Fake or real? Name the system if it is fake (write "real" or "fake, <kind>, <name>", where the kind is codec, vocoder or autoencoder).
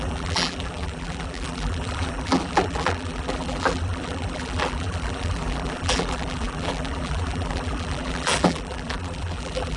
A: fake, vocoder, BigVGAN v2